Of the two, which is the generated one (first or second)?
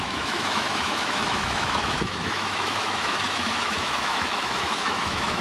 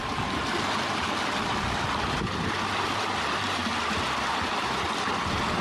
first